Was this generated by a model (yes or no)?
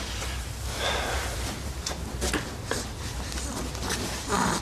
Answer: no